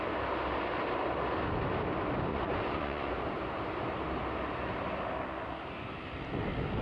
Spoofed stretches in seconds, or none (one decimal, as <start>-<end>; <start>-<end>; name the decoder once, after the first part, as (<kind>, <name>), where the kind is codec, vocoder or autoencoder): 2.3-3.1 (vocoder, Vocos)